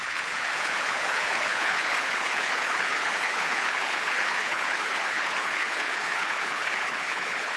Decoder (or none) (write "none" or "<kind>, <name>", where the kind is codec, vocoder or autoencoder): codec, HILCodec